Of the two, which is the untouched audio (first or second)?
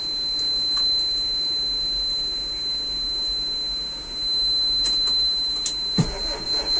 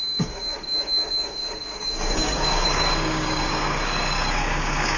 first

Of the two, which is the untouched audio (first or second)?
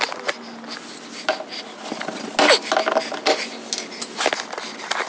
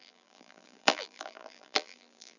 first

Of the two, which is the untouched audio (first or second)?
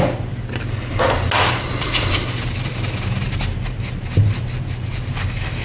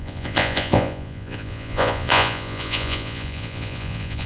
first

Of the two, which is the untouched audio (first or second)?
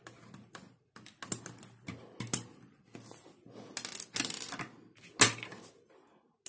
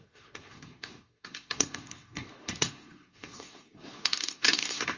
first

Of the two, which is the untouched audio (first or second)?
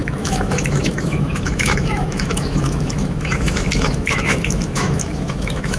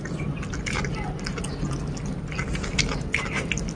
second